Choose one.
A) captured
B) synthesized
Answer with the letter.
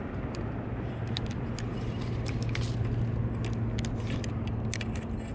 A